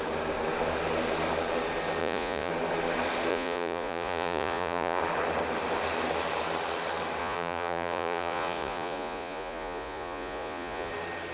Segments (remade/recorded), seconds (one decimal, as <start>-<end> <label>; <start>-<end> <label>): 0.0-2.0 recorded; 2.0-2.5 remade; 2.5-3.3 recorded; 3.3-5.0 remade; 5.0-7.2 recorded; 7.2-10.9 remade; 10.9-11.3 recorded